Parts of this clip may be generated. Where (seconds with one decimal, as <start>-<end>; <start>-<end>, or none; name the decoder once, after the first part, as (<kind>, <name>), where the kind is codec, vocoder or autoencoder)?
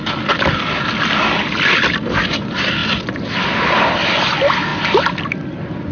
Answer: none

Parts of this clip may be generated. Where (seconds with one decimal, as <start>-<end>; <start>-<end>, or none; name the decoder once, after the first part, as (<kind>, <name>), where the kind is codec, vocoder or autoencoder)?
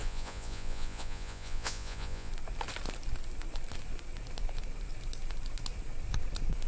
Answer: 0.0-2.3 (vocoder, Vocos)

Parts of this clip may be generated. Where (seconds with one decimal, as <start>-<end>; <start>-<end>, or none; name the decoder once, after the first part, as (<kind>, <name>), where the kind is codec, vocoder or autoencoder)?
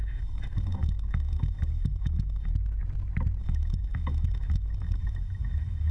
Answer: 0.0-2.5 (autoencoder, DAC-VAE); 3.4-5.9